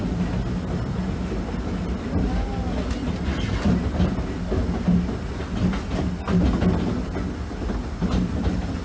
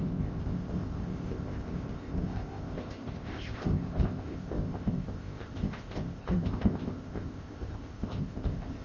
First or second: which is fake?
second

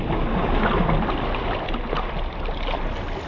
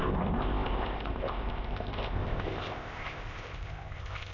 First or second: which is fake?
second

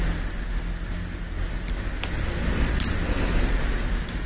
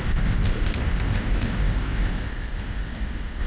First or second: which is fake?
second